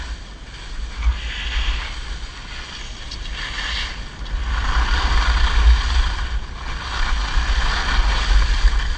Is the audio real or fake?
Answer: real